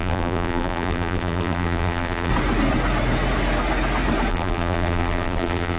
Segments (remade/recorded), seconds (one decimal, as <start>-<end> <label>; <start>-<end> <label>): 0.0-2.3 remade; 2.3-4.3 recorded; 4.3-5.8 remade